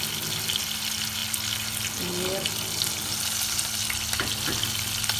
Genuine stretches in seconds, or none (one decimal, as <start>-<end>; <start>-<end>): 0.0-5.2